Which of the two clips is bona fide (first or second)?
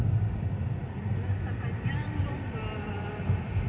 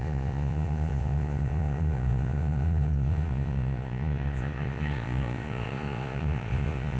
first